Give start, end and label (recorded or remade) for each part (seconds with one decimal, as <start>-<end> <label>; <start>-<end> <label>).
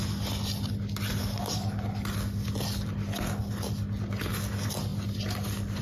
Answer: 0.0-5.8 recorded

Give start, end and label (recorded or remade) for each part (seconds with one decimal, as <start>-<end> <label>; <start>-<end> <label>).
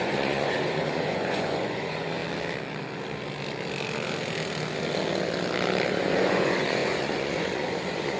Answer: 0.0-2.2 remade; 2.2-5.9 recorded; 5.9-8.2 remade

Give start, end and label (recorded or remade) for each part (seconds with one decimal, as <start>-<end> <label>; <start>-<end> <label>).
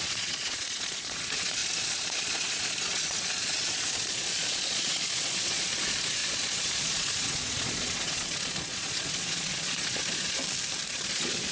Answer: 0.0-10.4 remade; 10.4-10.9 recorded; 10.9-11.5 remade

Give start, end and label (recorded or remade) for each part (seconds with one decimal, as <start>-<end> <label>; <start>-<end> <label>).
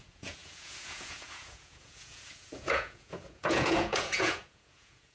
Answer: 0.0-5.1 remade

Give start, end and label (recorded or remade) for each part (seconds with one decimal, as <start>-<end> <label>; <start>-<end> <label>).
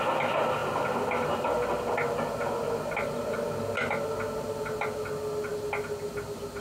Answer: 0.0-6.6 recorded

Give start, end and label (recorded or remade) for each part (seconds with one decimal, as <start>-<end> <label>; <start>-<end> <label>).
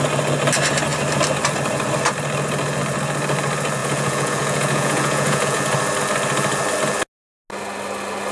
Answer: 0.0-3.8 recorded; 3.8-5.6 remade; 5.6-8.3 recorded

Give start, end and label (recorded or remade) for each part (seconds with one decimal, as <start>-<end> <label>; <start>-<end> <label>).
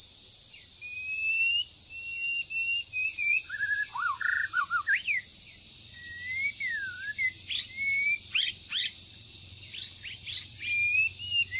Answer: 0.0-3.1 recorded; 3.1-4.6 remade; 4.6-11.6 recorded